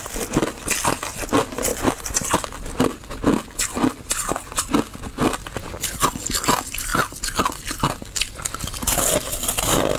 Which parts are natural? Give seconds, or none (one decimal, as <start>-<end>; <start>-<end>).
0.0-10.0